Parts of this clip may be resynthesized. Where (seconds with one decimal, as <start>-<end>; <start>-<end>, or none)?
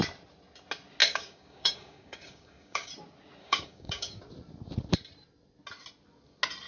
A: 1.0-2.9; 3.4-4.2